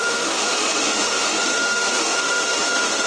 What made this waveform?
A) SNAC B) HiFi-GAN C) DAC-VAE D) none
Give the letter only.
C